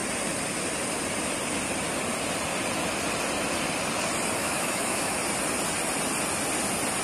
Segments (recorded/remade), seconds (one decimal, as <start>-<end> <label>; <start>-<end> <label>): 0.0-4.4 recorded; 4.4-5.2 remade; 5.2-7.0 recorded